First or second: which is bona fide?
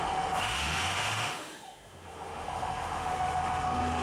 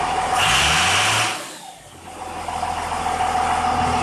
second